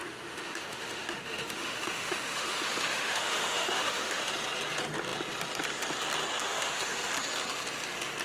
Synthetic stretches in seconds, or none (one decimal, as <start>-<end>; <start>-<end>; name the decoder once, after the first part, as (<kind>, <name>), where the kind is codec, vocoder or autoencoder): 0.0-4.3 (autoencoder, DAC-VAE); 6.4-7.1